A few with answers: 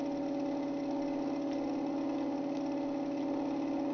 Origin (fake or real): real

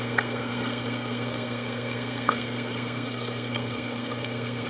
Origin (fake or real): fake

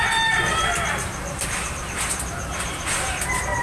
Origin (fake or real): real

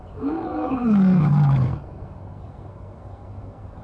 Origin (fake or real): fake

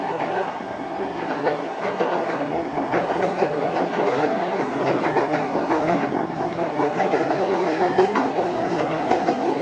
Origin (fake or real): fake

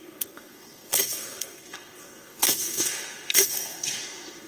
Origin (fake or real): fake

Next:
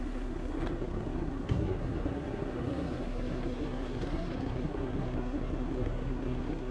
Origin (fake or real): fake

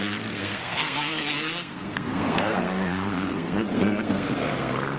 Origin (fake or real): fake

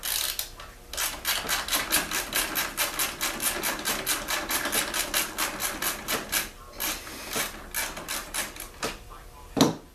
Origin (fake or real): real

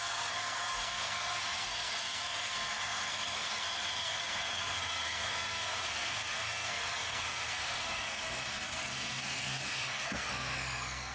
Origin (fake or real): fake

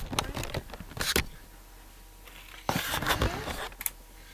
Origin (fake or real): real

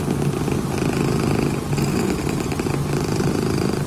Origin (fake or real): real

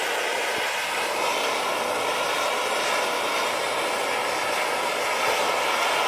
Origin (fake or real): real